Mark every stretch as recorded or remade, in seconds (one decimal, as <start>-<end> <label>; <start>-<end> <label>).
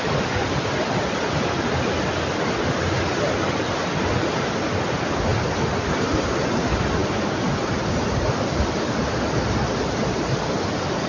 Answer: 0.0-11.1 recorded